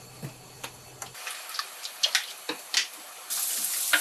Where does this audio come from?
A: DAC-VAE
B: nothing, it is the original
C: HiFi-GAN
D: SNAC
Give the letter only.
B